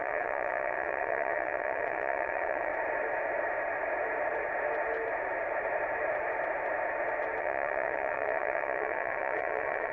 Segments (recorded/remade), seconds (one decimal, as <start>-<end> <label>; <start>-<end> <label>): 0.0-2.7 remade; 2.7-7.4 recorded; 7.4-9.9 remade